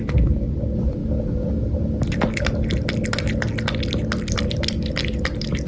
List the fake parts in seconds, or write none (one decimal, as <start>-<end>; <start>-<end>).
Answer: none